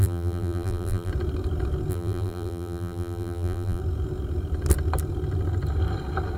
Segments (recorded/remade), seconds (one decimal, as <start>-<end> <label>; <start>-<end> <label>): 0.0-1.1 remade; 1.1-1.9 recorded; 1.9-3.8 remade; 3.8-6.4 recorded